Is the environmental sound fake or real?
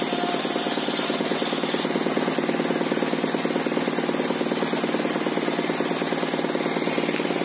real